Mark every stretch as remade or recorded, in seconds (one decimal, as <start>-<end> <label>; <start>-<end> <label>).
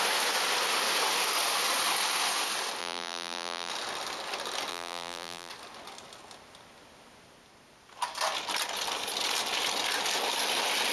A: 0.0-2.8 recorded; 2.8-3.7 remade; 3.7-4.7 recorded; 4.7-5.5 remade; 5.5-10.9 recorded